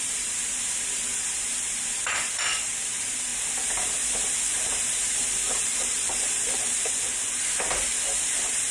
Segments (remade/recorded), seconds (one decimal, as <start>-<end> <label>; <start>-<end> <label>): 0.0-3.3 remade; 3.3-4.6 recorded; 4.6-8.7 remade